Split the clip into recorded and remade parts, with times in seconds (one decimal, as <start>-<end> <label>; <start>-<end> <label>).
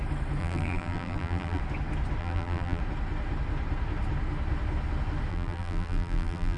0.0-0.4 recorded; 0.4-1.6 remade; 1.6-2.2 recorded; 2.2-2.8 remade; 2.8-5.3 recorded; 5.3-6.6 remade